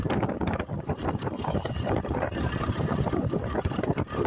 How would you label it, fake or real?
fake